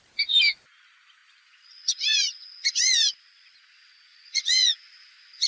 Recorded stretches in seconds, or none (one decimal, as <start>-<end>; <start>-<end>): 0.0-1.2; 3.2-4.1